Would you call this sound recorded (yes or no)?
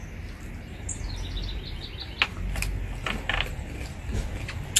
yes